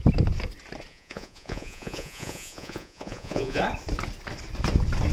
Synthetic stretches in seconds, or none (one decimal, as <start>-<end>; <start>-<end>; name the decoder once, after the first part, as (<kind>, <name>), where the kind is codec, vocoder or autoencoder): 0.9-3.6 (vocoder, Vocos)